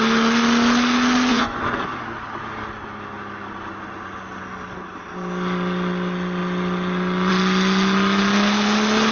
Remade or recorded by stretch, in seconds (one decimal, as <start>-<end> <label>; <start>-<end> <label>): 0.0-1.3 recorded; 1.3-2.0 remade; 2.0-9.1 recorded